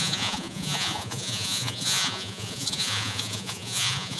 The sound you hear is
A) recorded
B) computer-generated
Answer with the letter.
B